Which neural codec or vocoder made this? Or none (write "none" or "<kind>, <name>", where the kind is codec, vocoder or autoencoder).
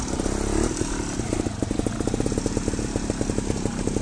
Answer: none